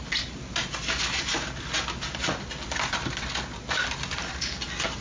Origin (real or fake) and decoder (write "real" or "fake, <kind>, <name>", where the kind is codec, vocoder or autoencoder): real